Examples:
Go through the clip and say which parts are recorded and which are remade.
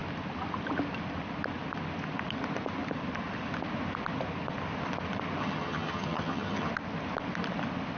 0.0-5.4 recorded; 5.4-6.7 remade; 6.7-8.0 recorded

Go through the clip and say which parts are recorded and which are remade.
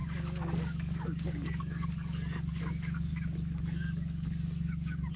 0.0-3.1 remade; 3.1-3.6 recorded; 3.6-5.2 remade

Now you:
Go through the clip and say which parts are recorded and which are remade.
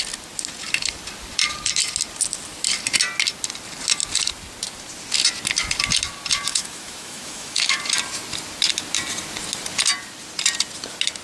0.0-6.5 recorded; 6.5-7.8 remade; 7.8-11.2 recorded